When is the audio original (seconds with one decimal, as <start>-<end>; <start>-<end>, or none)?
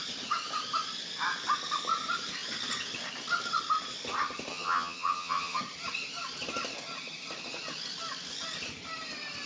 0.0-4.5; 5.6-9.5